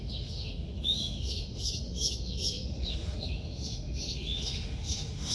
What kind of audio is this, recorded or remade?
remade